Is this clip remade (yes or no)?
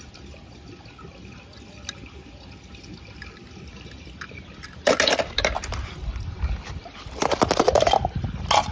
no